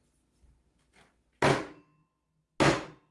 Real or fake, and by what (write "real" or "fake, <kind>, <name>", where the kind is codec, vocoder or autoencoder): real